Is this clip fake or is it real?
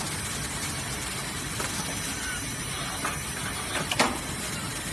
real